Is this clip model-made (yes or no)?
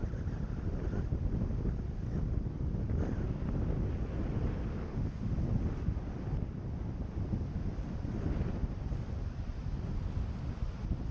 no